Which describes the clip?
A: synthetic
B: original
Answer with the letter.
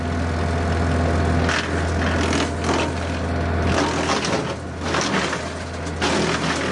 B